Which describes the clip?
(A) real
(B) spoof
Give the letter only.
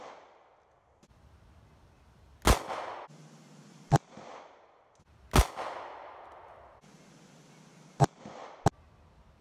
A